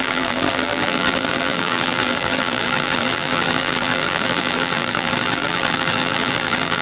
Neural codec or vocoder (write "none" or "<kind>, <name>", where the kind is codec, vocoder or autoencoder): vocoder, BigVGAN v2